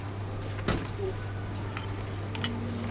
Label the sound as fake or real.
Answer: real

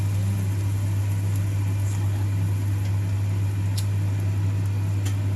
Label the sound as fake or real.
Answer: real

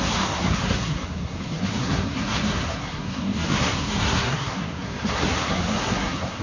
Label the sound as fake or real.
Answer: fake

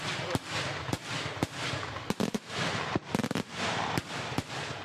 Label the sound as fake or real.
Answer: real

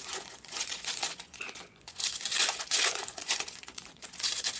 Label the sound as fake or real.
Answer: fake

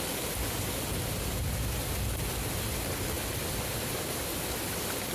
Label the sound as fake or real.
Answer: real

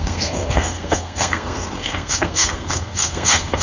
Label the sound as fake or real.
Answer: fake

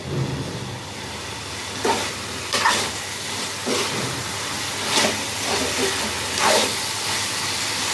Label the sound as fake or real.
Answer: real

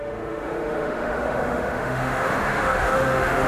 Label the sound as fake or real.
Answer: fake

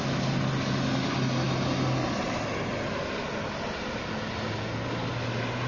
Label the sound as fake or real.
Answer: real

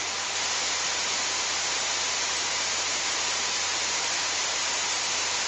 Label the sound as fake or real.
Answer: fake